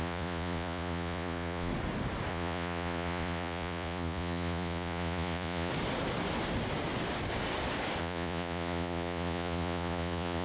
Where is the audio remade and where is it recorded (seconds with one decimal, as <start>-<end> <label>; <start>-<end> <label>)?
0.0-1.7 remade; 1.7-2.3 recorded; 2.3-5.7 remade; 5.7-8.0 recorded; 8.0-10.4 remade